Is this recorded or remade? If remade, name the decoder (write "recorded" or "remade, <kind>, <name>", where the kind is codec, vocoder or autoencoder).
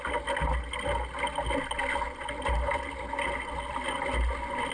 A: recorded